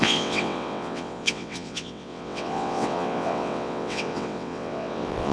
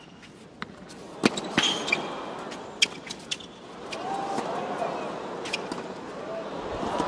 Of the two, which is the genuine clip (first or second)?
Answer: second